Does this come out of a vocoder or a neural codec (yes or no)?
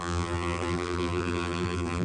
yes